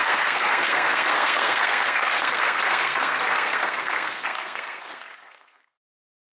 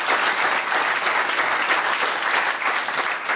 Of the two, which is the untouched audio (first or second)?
second